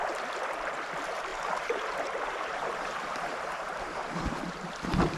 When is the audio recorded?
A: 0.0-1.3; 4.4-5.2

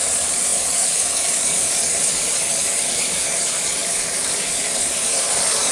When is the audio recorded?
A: none

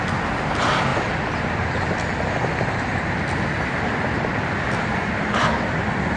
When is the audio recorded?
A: 0.0-6.2

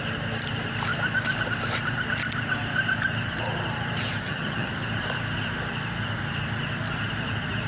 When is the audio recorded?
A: 0.0-4.2; 4.7-7.7

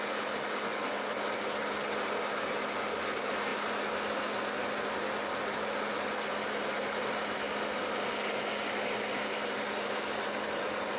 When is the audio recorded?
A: 0.0-11.0

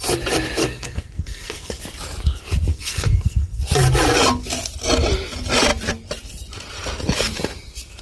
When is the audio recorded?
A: 0.0-0.6; 1.8-2.7; 3.6-8.0